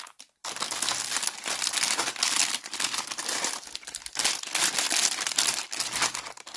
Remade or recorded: recorded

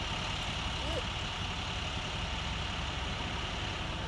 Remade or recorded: recorded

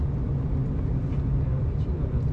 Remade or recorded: recorded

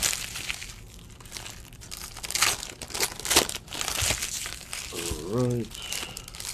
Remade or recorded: recorded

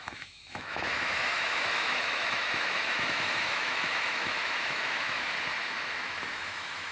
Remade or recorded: remade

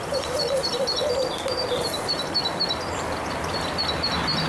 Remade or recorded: recorded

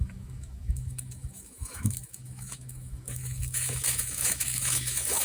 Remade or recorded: remade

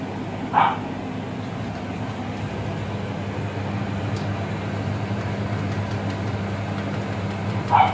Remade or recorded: recorded